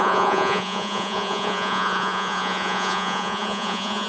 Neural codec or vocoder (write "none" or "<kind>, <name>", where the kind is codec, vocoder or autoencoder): vocoder, Vocos